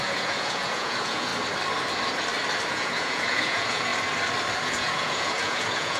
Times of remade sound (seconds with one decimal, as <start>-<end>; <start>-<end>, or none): 0.0-1.3; 2.7-3.9; 4.6-6.0